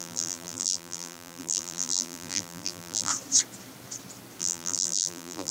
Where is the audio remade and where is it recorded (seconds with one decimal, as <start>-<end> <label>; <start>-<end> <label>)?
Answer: 0.0-3.1 remade; 3.1-4.4 recorded; 4.4-5.5 remade